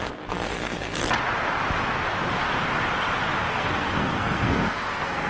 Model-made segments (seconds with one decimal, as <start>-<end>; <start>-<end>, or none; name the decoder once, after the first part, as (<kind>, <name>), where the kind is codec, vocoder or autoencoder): 0.0-1.0 (codec, SNAC); 3.5-5.3